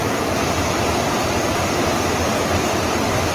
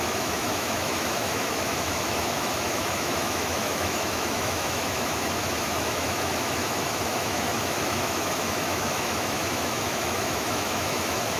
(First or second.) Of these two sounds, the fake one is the second